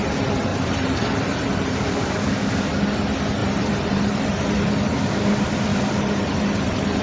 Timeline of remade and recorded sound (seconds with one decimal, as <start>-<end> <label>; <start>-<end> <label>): 0.0-0.5 recorded; 0.5-2.2 remade; 2.2-3.4 recorded; 3.4-4.5 remade; 4.5-5.7 recorded; 5.7-7.0 remade